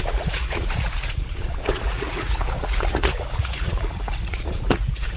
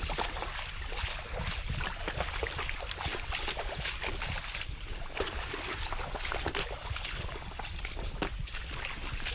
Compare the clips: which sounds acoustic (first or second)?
second